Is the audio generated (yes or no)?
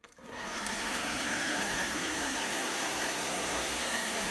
yes